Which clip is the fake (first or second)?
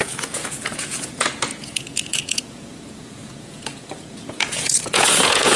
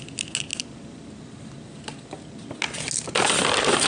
first